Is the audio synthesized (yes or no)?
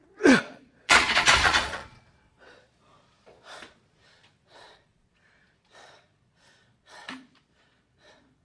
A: yes